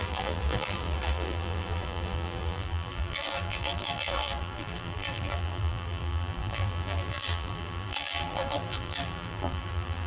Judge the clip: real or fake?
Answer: fake